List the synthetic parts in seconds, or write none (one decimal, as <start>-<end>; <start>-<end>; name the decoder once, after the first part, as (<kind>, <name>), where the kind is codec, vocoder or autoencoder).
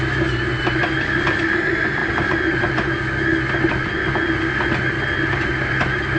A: none